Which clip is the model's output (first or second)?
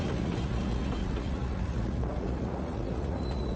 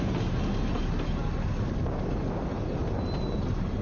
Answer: first